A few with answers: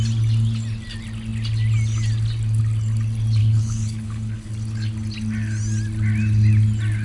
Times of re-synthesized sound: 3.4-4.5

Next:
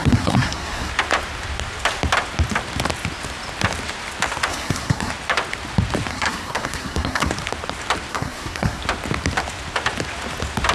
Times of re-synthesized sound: 0.0-0.9; 4.5-5.1; 6.1-7.3; 8.1-8.8

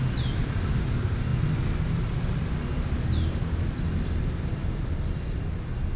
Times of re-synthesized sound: none

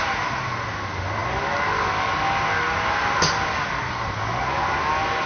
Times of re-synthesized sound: none

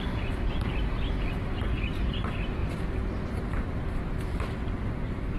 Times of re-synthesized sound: 0.0-2.6; 3.3-5.4

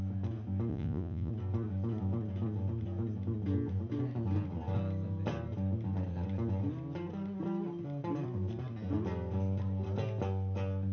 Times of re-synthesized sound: 0.7-1.3

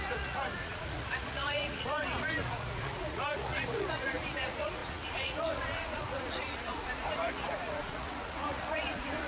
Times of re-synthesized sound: 0.0-9.3

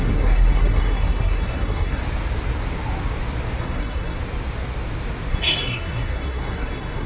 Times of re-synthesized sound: 0.0-2.0; 3.6-4.2; 5.3-7.1